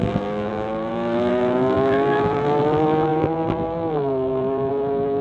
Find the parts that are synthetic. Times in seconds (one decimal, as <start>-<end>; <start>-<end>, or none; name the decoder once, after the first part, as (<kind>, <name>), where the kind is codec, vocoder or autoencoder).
0.0-5.2 (vocoder, BigVGAN v2)